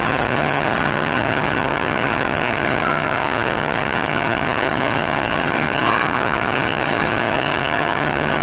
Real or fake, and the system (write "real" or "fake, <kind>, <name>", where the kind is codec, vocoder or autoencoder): fake, vocoder, HiFi-GAN